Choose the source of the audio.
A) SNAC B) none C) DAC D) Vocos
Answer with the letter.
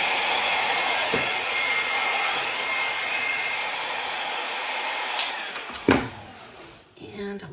D